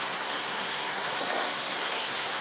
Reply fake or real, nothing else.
fake